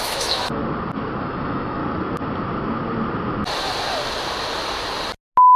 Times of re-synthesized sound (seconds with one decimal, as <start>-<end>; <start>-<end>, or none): 0.0-0.6; 1.2-1.8

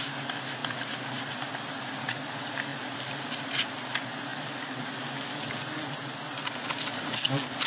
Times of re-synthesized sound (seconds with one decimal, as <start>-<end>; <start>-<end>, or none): none

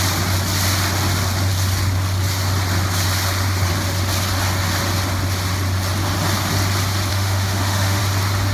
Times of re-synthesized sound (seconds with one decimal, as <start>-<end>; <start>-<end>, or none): 7.1-8.0

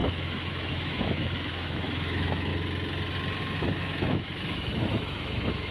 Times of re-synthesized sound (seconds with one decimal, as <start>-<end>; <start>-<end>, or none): 0.0-2.5; 3.4-5.7

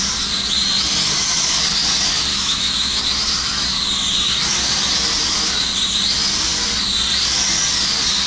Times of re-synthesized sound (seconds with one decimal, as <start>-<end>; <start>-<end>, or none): 2.3-3.0

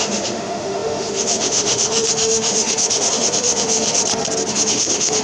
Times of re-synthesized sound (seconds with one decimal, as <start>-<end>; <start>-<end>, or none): 0.0-4.0; 4.5-5.2

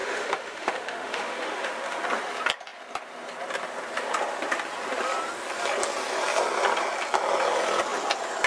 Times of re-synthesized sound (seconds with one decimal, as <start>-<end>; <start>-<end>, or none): 0.0-2.0

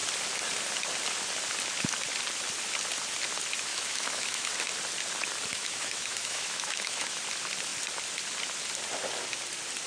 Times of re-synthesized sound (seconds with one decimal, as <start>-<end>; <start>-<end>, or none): 3.7-4.5; 5.5-7.2